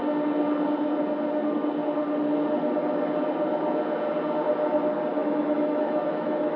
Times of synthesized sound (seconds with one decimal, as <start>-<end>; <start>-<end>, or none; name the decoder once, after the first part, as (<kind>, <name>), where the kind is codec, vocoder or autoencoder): 5.2-6.6 (autoencoder, DAC-VAE)